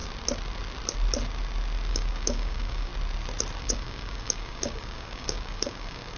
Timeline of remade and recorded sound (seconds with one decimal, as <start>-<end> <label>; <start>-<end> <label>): 0.0-1.9 recorded; 1.9-2.9 remade; 2.9-3.6 recorded; 3.6-6.2 remade